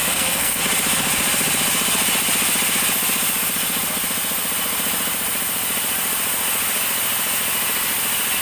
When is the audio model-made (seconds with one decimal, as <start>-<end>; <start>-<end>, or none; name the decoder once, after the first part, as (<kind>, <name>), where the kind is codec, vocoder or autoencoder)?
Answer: 0.0-0.6 (codec, SNAC)